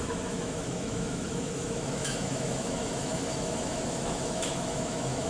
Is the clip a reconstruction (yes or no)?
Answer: yes